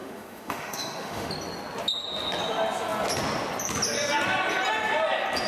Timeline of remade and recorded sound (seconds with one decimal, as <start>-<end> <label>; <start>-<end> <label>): 0.0-1.3 remade; 1.3-5.5 recorded